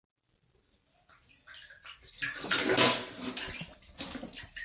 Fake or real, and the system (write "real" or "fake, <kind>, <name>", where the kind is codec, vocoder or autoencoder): real